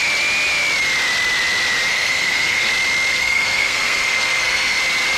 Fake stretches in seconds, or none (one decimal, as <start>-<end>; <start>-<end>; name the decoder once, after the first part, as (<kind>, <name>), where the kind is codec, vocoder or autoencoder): 1.9-2.7 (codec, SNAC); 3.1-4.8